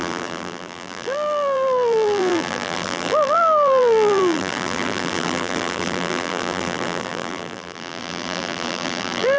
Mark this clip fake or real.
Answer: fake